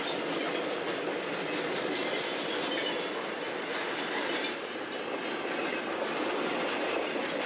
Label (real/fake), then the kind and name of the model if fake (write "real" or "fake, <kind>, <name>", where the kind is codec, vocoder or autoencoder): real